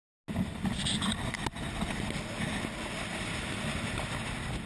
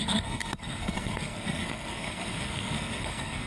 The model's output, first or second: second